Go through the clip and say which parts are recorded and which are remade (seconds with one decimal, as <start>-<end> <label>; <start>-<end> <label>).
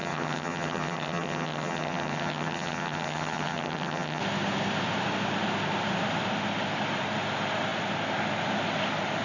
0.0-4.2 remade; 4.2-9.2 recorded